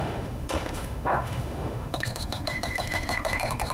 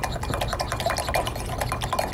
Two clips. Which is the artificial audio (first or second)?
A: first